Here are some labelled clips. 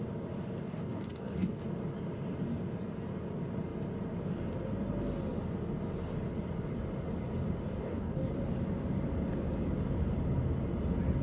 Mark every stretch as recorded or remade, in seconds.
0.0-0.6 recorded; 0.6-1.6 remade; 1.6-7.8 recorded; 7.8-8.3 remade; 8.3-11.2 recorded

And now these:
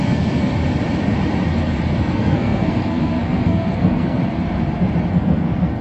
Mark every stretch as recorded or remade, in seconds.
0.0-0.5 remade; 0.5-2.0 recorded; 2.0-4.2 remade; 4.2-5.1 recorded; 5.1-5.8 remade

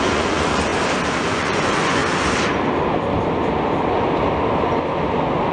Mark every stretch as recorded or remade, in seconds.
0.0-0.7 remade; 0.7-1.3 recorded; 1.3-2.0 remade; 2.0-5.5 recorded

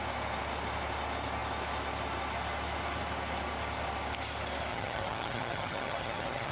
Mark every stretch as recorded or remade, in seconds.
0.0-4.7 recorded; 4.7-6.5 remade

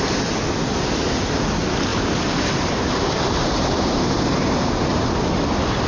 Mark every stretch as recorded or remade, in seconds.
0.0-1.9 recorded; 1.9-5.4 remade; 5.4-5.9 recorded

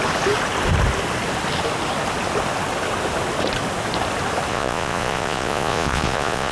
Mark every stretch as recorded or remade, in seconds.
0.0-4.5 recorded; 4.5-6.5 remade

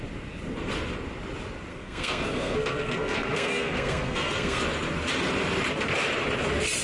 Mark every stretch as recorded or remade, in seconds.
0.0-1.7 recorded; 1.7-4.6 remade; 4.6-6.8 recorded